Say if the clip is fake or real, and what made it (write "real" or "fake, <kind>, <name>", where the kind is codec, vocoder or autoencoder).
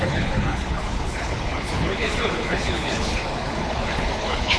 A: fake, codec, HILCodec